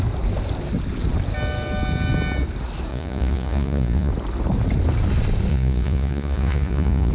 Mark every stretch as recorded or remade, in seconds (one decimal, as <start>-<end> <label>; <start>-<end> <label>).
0.0-2.9 recorded; 2.9-4.1 remade; 4.1-5.5 recorded; 5.5-7.1 remade